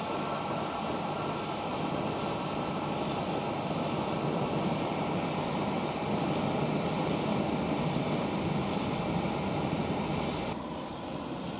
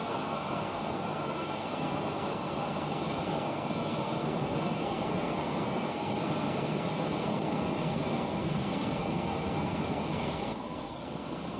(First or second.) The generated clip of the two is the second